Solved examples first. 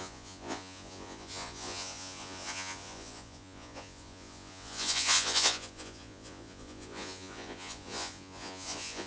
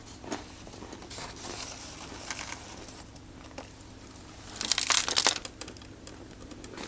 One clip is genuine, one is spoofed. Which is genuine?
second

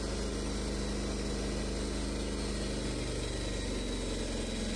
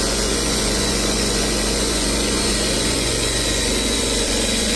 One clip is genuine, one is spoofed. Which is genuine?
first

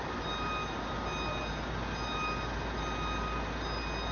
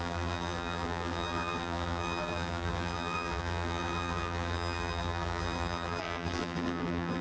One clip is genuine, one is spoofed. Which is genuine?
first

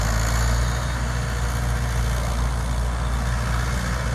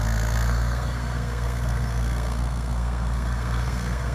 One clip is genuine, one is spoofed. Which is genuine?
first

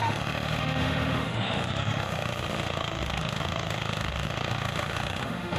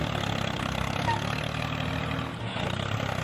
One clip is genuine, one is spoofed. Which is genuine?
second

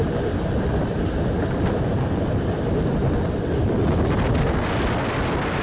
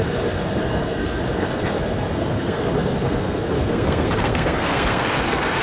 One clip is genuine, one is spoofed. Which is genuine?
first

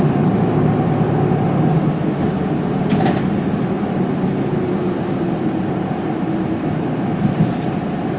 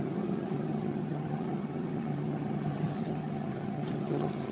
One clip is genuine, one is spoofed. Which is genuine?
first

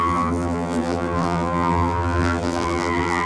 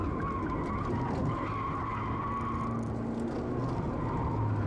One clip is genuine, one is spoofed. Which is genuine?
second